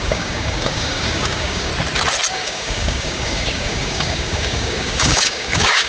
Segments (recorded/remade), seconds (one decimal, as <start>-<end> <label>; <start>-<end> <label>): 0.0-1.7 remade; 1.7-2.3 recorded; 2.3-5.9 remade